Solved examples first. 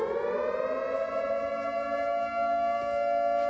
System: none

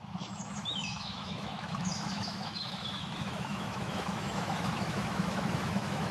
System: autoencoder, DAC-VAE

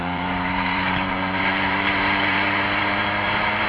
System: vocoder, BigVGAN v2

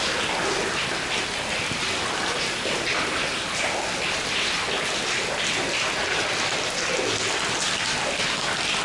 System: none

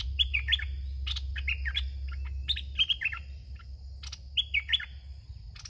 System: none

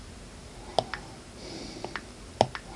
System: none